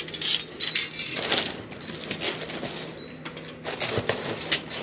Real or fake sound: real